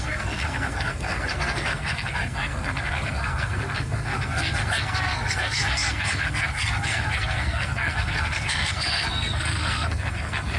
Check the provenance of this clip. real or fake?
fake